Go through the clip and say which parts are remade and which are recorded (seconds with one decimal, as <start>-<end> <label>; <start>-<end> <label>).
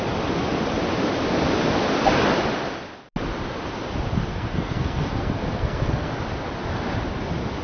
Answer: 0.0-4.3 recorded; 4.3-6.1 remade; 6.1-7.6 recorded